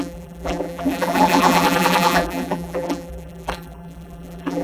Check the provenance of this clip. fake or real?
fake